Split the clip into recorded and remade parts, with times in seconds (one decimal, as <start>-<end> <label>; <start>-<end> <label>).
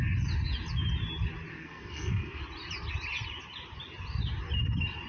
0.0-1.5 recorded; 1.5-2.4 remade; 2.4-5.1 recorded